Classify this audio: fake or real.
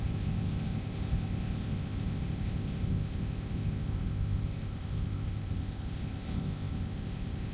fake